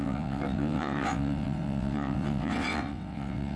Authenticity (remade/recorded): remade